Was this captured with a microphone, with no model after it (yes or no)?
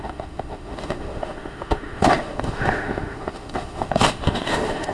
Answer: no